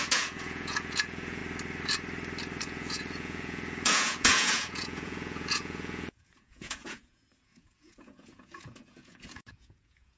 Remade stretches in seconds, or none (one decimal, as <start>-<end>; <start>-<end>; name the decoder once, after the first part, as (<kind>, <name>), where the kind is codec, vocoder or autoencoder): 0.0-1.4 (vocoder, Vocos); 2.6-10.2